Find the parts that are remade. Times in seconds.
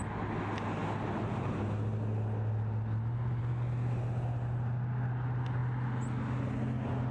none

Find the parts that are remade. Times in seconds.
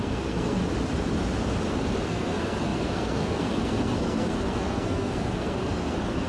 0.0-0.6 (codec, SNAC); 1.7-6.3